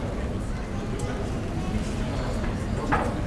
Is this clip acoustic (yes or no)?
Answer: yes